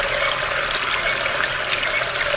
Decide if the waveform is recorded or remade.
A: recorded